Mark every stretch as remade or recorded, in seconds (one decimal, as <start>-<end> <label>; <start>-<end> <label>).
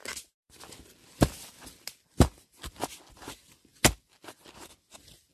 0.0-5.3 recorded